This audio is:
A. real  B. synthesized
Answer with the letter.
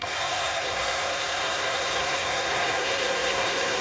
B